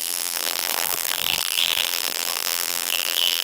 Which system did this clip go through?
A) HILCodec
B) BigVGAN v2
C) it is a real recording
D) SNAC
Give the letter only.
B